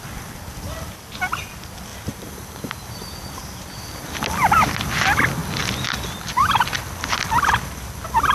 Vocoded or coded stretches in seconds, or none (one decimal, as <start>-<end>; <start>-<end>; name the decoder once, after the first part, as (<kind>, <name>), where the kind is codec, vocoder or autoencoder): 1.9-4.1 (vocoder, BigVGAN v2)